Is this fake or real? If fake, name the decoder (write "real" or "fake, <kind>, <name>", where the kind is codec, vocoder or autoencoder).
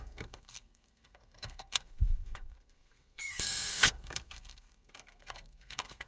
fake, codec, SNAC